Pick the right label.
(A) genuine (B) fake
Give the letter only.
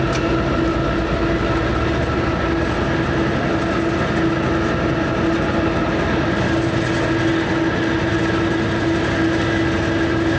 A